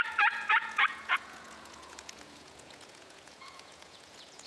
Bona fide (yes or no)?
no